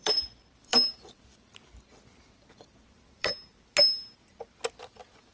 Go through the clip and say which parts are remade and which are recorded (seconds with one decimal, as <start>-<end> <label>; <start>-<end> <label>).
0.0-3.3 remade; 3.3-4.8 recorded; 4.8-5.3 remade